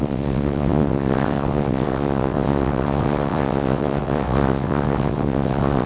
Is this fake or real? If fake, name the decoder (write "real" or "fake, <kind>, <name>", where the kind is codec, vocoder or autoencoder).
fake, vocoder, WaveNeXt